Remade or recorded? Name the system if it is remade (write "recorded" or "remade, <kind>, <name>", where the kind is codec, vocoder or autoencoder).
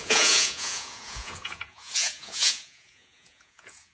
remade, vocoder, Vocos